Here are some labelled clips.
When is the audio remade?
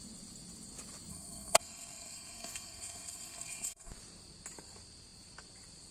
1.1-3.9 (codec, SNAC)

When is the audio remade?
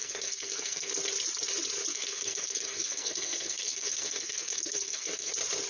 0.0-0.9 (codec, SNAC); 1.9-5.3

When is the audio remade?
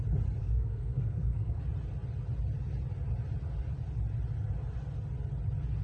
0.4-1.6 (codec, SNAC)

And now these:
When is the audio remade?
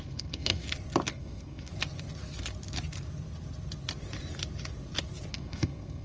0.0-0.6 (codec, SNAC); 1.1-1.7; 5.3-6.0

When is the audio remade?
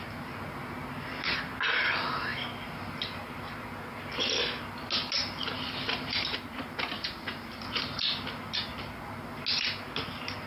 none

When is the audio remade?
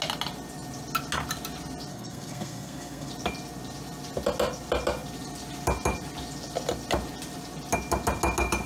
1.9-3.1 (codec, SNAC)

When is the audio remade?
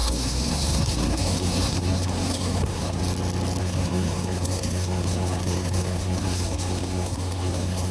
0.0-3.0 (codec, SNAC); 3.6-7.9